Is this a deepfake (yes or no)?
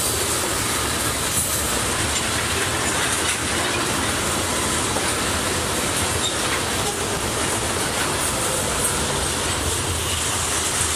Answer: no